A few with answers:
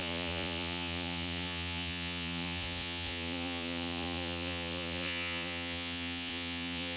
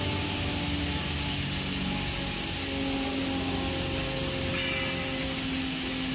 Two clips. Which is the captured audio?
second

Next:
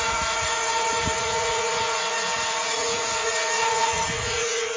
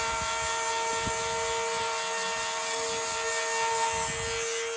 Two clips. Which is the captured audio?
second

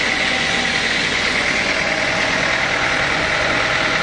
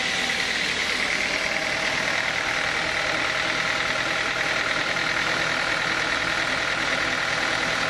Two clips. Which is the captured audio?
second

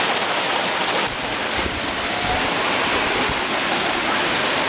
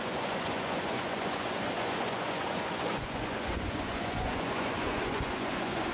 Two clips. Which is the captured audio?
first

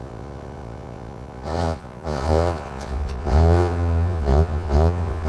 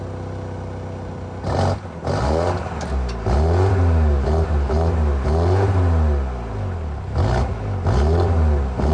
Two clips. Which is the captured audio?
second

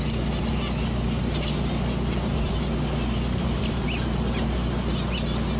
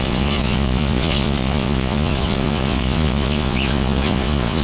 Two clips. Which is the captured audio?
first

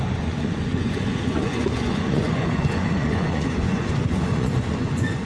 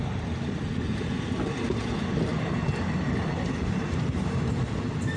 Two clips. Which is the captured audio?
second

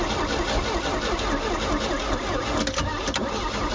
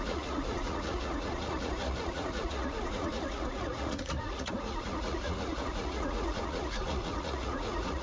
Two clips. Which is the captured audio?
first